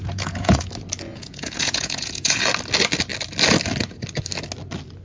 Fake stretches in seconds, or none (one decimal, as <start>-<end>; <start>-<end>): 0.0-0.7; 1.1-2.4